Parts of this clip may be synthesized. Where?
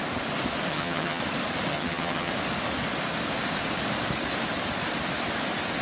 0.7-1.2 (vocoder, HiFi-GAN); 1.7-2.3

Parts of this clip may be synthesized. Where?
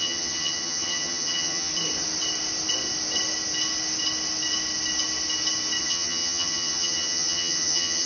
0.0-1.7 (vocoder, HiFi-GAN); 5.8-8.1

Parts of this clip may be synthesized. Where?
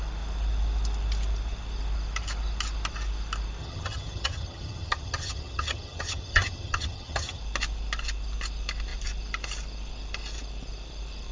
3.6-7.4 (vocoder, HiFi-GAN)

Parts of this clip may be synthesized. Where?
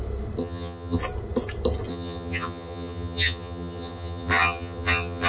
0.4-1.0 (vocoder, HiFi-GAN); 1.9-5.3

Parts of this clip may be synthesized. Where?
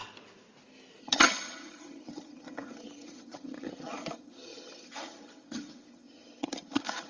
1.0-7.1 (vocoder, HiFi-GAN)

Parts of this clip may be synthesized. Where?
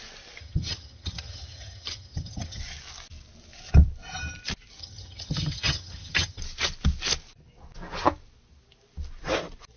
0.4-2.6 (vocoder, HiFi-GAN); 4.8-6.4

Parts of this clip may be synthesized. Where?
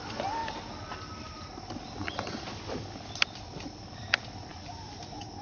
none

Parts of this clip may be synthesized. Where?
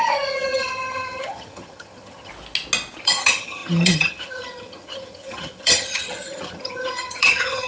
0.0-2.3 (vocoder, HiFi-GAN); 3.0-7.7